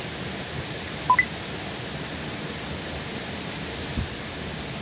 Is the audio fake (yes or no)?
no